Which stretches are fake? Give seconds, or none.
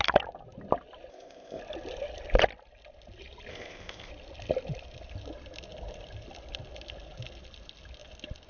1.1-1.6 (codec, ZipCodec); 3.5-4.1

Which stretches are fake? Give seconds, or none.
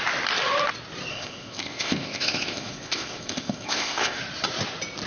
1.1-4.2 (codec, ZipCodec)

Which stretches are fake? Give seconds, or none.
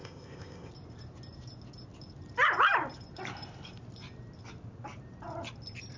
0.0-0.7 (codec, ZipCodec)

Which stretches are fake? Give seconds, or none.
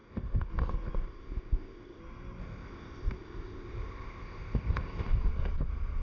0.0-0.5 (codec, ZipCodec); 1.0-2.0; 2.4-5.2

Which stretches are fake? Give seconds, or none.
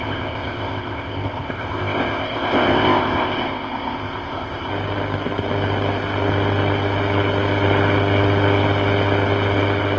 0.0-4.7 (codec, ZipCodec)